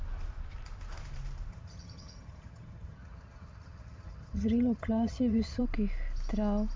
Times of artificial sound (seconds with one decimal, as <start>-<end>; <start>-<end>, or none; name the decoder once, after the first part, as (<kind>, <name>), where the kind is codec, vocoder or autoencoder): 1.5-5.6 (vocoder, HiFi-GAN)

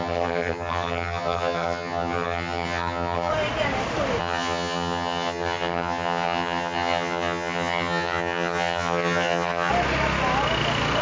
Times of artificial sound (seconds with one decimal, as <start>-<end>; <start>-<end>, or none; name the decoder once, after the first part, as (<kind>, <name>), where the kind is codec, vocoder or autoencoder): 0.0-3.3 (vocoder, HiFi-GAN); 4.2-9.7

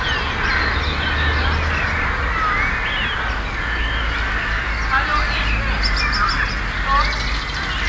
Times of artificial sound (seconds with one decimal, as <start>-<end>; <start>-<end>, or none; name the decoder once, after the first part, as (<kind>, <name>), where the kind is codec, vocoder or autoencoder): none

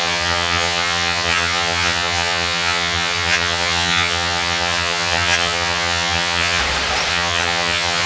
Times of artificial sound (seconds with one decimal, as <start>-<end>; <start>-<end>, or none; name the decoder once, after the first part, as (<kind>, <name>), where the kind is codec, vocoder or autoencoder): 0.0-6.6 (vocoder, HiFi-GAN); 7.1-8.1

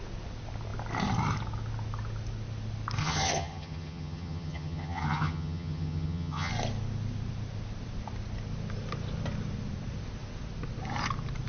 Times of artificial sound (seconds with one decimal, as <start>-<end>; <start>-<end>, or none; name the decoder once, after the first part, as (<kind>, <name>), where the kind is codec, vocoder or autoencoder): 3.0-6.5 (vocoder, HiFi-GAN)

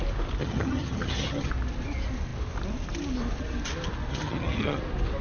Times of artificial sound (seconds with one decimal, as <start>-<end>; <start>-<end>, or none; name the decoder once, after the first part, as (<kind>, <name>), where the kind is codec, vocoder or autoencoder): 0.4-1.5 (vocoder, HiFi-GAN); 4.1-4.8